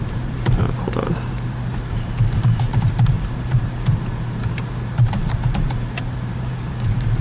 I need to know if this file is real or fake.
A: fake